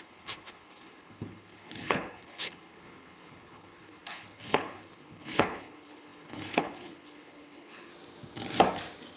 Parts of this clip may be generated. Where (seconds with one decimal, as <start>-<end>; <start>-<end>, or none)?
0.0-7.9